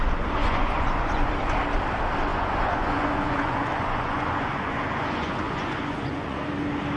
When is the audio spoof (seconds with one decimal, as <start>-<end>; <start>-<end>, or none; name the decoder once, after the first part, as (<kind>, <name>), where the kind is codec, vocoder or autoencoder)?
0.4-1.3 (vocoder, Vocos); 2.3-6.5